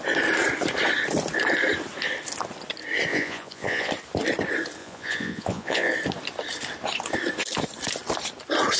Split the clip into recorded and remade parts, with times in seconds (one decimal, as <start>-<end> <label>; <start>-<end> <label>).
0.0-3.1 recorded; 3.1-3.9 remade; 3.9-4.8 recorded; 4.8-5.9 remade; 5.9-8.8 recorded